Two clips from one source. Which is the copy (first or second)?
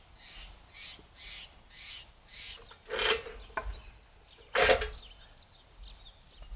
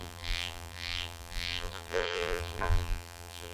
second